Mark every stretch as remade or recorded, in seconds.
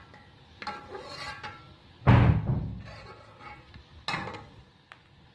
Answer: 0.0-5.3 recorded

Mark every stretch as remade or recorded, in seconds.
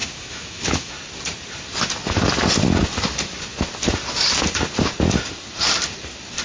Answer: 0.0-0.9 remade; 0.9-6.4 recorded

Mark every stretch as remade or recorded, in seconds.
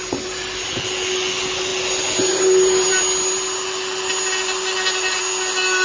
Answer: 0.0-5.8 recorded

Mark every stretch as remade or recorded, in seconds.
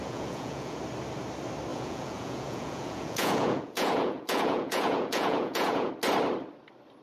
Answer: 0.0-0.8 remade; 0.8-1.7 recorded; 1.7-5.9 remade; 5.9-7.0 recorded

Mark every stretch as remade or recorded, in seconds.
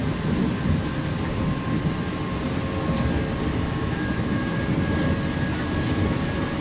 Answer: 0.0-3.5 recorded; 3.5-4.6 remade; 4.6-6.6 recorded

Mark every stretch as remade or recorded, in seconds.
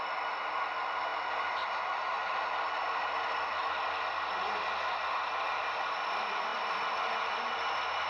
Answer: 0.0-8.1 recorded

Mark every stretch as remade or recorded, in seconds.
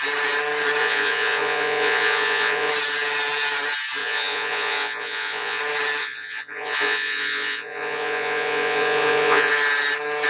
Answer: 0.0-0.8 recorded; 0.8-2.7 remade; 2.7-4.0 recorded; 4.0-5.6 remade; 5.6-6.0 recorded; 6.0-9.5 remade; 9.5-10.3 recorded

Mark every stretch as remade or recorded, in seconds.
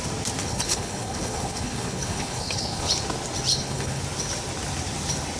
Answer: 0.0-0.4 recorded; 0.4-2.9 remade; 2.9-3.5 recorded; 3.5-4.0 remade; 4.0-5.4 recorded